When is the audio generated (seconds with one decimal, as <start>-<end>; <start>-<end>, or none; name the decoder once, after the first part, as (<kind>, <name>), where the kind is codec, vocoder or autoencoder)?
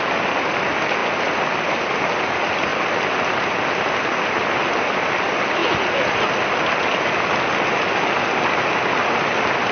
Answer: none